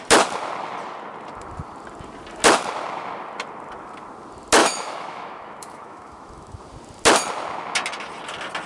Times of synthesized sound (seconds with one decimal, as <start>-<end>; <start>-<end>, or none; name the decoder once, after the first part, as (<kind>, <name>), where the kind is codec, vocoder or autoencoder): 4.6-6.6 (autoencoder, DAC-VAE)